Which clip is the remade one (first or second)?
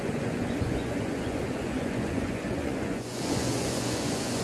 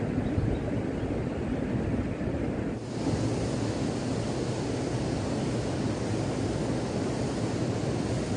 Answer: first